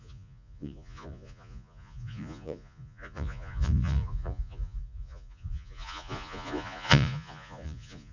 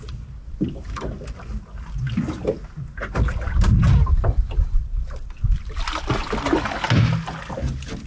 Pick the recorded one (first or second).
second